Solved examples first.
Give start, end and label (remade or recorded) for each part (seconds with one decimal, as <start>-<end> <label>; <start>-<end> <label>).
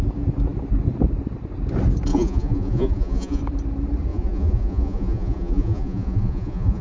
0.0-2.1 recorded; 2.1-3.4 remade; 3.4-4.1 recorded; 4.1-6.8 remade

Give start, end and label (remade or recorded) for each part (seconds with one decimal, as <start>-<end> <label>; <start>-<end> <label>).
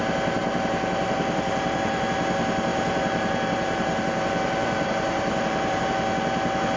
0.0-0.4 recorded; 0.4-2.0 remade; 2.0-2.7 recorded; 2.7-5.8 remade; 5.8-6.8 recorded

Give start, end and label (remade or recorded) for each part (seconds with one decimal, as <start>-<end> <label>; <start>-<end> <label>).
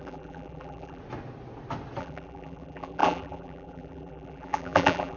0.0-1.0 remade; 1.0-2.0 recorded; 2.0-5.2 remade